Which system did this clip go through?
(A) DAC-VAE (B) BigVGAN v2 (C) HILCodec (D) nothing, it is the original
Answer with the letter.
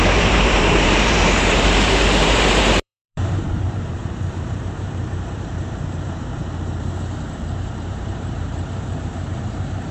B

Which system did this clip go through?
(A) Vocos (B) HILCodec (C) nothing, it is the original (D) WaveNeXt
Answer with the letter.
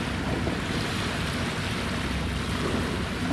C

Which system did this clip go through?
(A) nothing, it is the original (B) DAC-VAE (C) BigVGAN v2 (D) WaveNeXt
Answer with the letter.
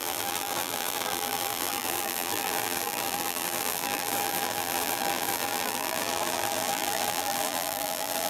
C